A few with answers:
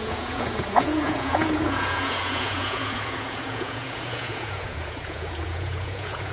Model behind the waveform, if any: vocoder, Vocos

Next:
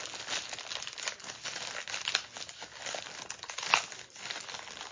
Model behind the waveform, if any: none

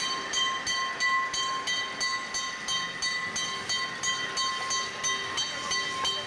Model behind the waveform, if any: none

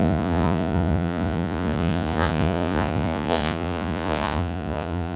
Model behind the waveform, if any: vocoder, Vocos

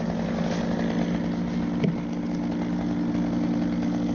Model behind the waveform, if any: none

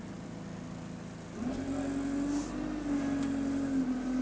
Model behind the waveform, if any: none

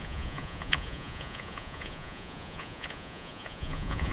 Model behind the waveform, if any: vocoder, Vocos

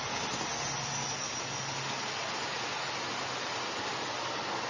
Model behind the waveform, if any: none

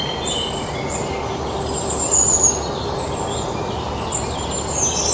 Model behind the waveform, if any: none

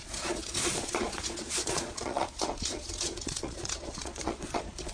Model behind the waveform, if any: vocoder, Vocos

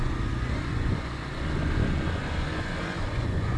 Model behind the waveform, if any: vocoder, Vocos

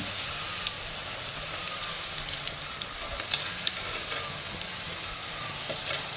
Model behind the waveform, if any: none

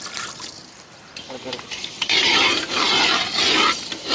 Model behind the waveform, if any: none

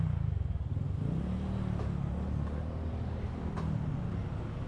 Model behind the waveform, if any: none